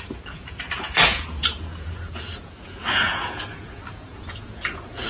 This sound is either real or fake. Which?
fake